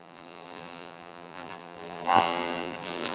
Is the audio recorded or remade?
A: remade